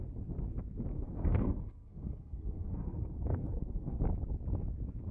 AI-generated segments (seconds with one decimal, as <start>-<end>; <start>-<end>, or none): 0.9-4.0

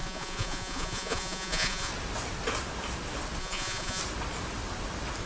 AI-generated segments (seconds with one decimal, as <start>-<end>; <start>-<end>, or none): 0.0-1.9; 3.4-4.0